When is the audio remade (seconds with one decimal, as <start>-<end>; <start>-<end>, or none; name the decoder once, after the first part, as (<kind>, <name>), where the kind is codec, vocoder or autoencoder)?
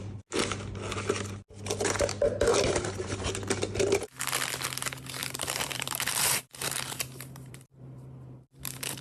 2.5-3.3 (vocoder, BigVGAN v2); 5.2-9.0